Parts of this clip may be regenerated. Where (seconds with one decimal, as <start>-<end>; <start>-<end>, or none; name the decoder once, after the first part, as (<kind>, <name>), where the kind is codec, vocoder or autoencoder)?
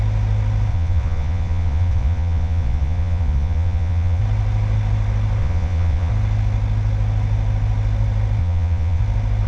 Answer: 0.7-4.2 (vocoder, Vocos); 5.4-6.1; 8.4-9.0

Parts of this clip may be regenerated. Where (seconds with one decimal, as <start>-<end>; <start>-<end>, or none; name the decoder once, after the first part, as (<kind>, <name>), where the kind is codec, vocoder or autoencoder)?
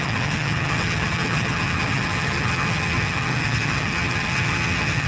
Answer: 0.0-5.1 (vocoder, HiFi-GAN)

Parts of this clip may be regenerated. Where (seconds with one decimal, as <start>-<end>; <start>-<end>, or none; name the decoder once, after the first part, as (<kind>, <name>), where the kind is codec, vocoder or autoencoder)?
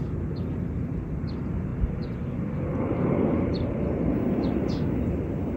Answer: none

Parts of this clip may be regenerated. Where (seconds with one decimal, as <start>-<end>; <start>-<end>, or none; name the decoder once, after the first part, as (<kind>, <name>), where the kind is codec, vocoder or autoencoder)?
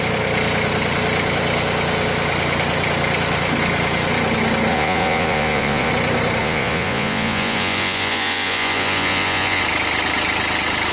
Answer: 4.7-5.9 (vocoder, Vocos); 6.4-9.6